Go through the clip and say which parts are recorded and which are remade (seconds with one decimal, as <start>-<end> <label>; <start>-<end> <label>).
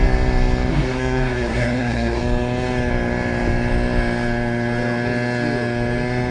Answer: 0.0-0.7 recorded; 0.7-2.2 remade; 2.2-6.3 recorded